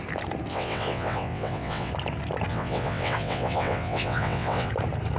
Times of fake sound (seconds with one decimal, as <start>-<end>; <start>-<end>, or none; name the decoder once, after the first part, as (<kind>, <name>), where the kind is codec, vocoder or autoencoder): 0.5-1.9 (vocoder, WaveNeXt); 2.5-4.7